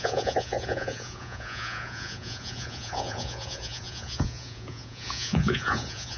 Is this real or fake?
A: fake